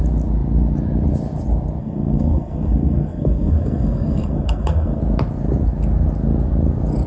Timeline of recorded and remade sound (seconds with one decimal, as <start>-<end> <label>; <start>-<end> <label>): 0.0-1.8 recorded; 1.8-5.0 remade; 5.0-7.1 recorded